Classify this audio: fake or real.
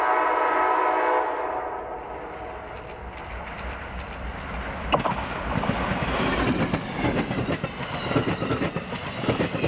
real